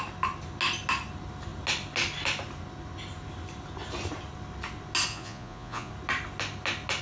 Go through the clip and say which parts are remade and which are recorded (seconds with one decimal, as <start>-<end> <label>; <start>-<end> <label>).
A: 0.0-5.1 recorded; 5.1-5.9 remade; 5.9-7.0 recorded